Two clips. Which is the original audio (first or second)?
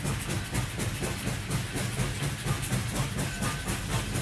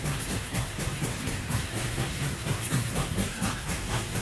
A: first